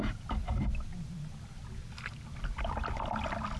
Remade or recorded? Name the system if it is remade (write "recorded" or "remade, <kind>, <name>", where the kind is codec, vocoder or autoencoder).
recorded